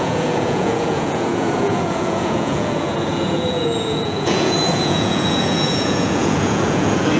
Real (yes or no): no